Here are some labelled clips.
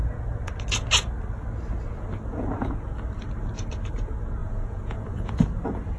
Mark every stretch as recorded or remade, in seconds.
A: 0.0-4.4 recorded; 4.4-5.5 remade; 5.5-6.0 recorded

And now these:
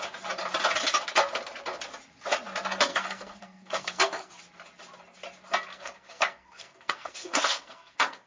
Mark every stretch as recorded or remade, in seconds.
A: 0.0-2.9 recorded; 2.9-4.4 remade; 4.4-5.7 recorded; 5.7-8.3 remade

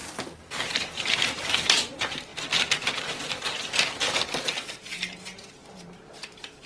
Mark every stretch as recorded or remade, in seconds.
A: 0.0-0.7 recorded; 0.7-2.3 remade; 2.3-4.7 recorded; 4.7-6.7 remade